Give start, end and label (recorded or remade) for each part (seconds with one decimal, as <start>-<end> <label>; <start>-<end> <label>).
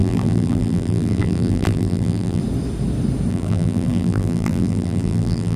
0.0-2.4 remade; 2.4-3.3 recorded; 3.3-5.6 remade